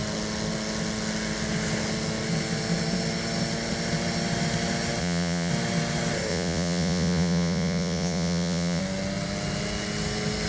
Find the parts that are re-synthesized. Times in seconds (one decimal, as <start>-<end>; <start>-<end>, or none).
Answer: 5.0-5.5; 6.3-8.8